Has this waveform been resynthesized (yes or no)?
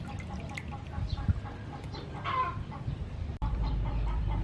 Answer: yes